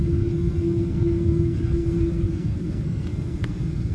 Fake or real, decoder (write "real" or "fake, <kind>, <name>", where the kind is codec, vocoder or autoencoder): fake, codec, SNAC